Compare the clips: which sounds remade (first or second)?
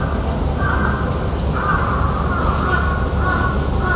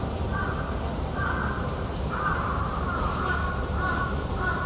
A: second